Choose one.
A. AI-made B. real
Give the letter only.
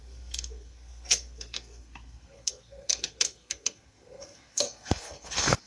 A